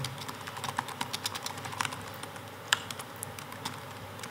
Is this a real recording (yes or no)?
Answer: yes